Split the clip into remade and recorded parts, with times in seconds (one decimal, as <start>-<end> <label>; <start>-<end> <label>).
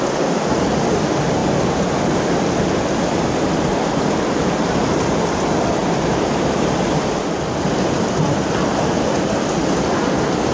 0.0-5.8 recorded; 5.8-6.9 remade; 6.9-10.5 recorded